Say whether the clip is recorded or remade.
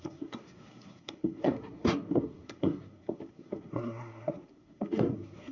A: remade